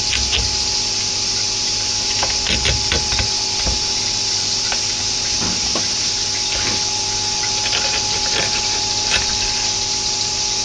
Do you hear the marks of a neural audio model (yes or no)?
no